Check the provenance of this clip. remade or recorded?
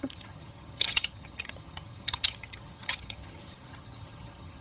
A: remade